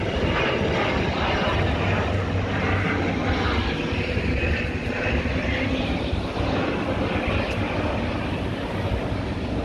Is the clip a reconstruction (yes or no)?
no